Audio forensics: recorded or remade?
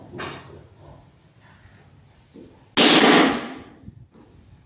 recorded